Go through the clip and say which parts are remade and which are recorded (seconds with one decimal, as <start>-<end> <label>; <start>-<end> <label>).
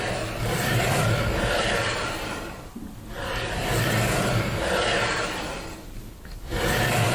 0.0-3.6 remade; 3.6-4.4 recorded; 4.4-7.1 remade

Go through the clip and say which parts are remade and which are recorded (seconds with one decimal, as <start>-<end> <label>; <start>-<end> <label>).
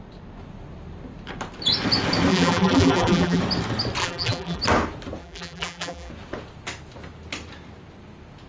0.0-2.3 recorded; 2.3-3.4 remade; 3.4-4.0 recorded; 4.0-4.6 remade; 4.6-5.2 recorded; 5.2-6.1 remade; 6.1-8.5 recorded